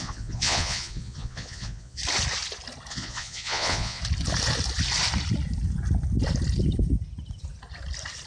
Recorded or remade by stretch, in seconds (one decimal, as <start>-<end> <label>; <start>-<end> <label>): 0.0-2.0 remade; 2.0-2.9 recorded; 2.9-4.0 remade; 4.0-8.3 recorded